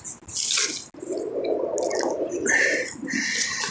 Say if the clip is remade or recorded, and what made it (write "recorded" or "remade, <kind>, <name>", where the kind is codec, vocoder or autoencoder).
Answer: recorded